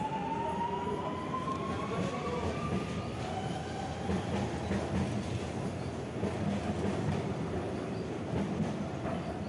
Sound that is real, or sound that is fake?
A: real